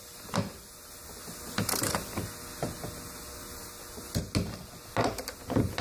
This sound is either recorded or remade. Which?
recorded